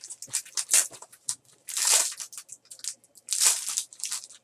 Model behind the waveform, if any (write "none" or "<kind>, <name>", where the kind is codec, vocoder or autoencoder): none